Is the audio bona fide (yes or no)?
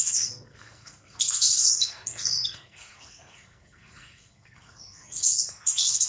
no